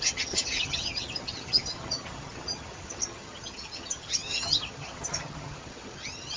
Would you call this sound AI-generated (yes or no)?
yes